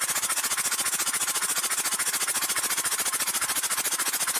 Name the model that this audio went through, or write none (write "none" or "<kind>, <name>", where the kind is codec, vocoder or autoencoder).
none